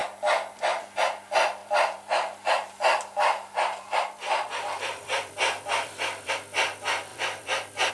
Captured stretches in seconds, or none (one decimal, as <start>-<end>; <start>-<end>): 0.8-1.6; 6.3-7.1